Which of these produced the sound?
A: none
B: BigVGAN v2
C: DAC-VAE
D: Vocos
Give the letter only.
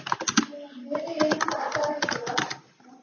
A